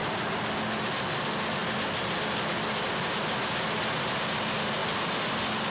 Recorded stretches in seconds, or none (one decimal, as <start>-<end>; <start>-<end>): 0.0-5.7